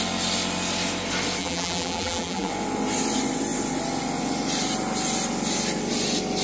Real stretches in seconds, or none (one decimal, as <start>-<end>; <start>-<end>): 0.0-1.4; 2.5-6.4